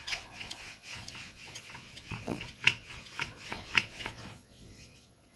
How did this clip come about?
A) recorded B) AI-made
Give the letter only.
B